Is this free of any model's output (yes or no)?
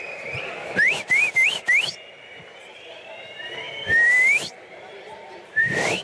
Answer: no